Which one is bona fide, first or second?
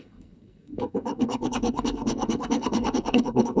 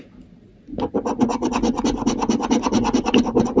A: second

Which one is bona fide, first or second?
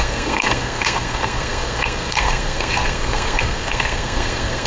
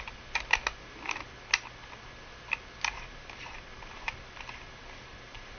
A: second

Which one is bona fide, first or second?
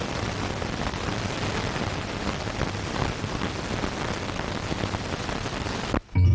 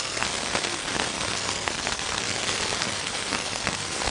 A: first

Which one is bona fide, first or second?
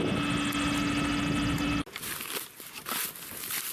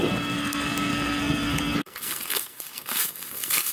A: first